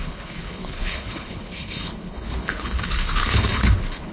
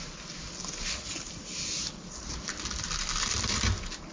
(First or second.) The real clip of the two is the second